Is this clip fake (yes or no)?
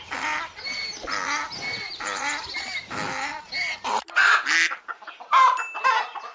no